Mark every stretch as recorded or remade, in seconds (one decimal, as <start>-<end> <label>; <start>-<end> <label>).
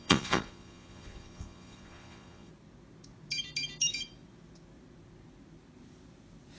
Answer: 0.0-2.5 remade; 2.5-6.6 recorded